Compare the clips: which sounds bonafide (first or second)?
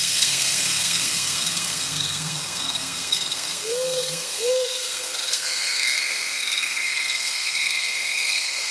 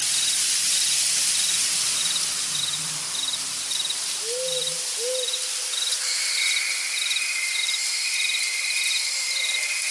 second